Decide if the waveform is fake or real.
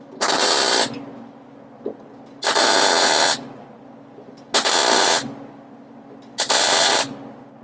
real